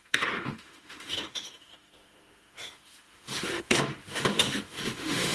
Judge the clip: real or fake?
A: fake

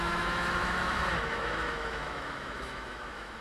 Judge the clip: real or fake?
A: fake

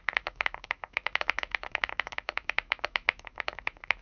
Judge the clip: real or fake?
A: fake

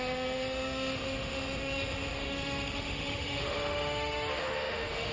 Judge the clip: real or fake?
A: fake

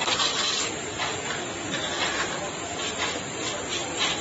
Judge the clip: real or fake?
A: real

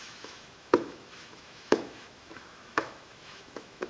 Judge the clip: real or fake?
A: fake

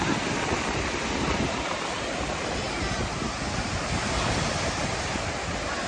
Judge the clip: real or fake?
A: real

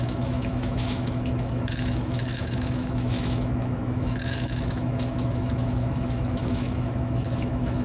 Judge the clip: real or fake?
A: fake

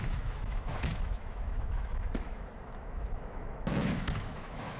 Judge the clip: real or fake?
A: fake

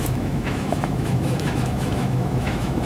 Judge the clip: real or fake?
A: fake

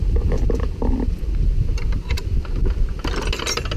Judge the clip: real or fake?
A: real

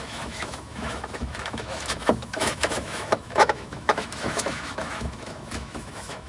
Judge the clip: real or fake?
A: fake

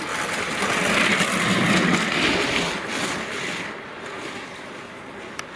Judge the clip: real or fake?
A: real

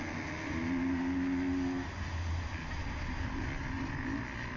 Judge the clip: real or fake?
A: real